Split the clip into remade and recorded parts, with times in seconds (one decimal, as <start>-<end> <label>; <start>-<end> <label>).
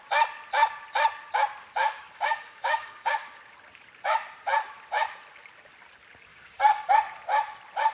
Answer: 0.0-1.8 recorded; 1.8-3.4 remade; 3.4-6.3 recorded; 6.3-6.9 remade; 6.9-7.9 recorded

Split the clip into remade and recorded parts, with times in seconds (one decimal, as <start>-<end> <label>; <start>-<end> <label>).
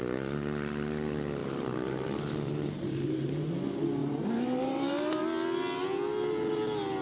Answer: 0.0-1.4 recorded; 1.4-3.5 remade; 3.5-4.0 recorded; 4.0-5.2 remade; 5.2-7.0 recorded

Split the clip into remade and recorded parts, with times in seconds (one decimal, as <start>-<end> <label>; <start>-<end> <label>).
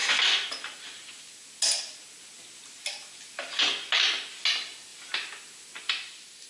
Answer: 0.0-6.5 recorded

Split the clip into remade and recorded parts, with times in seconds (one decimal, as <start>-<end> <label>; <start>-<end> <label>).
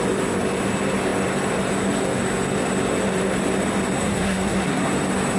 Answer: 0.0-4.0 recorded; 4.0-4.9 remade; 4.9-5.4 recorded